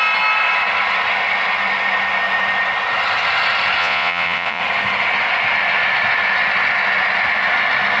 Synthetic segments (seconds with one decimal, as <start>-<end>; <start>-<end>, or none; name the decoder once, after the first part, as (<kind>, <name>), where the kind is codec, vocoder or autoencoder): 3.8-4.6 (vocoder, Vocos)